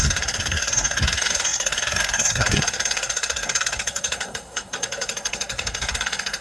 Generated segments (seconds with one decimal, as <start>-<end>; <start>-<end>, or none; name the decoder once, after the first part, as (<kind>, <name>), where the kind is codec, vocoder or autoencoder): 0.0-6.4 (codec, SNAC)